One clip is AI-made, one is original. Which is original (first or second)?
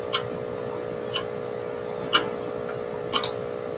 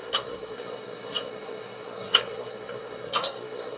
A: first